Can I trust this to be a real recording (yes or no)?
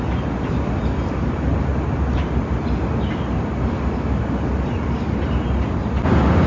yes